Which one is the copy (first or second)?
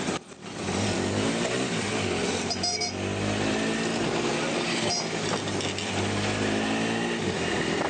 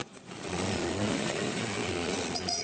second